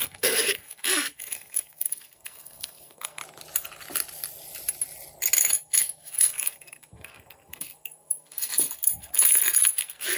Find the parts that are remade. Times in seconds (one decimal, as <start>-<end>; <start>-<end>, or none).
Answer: 0.0-3.2; 5.4-10.2